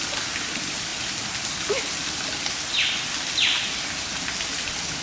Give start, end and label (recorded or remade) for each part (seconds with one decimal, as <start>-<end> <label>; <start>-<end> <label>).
0.0-5.0 recorded